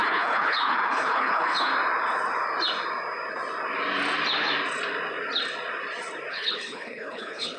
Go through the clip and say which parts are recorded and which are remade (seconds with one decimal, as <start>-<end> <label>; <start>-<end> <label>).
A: 0.0-1.7 remade; 1.7-6.3 recorded; 6.3-7.6 remade